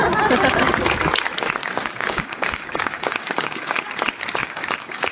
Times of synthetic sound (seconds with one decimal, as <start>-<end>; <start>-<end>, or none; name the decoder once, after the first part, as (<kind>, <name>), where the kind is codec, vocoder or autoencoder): 1.6-3.8 (codec, DAC); 4.4-5.1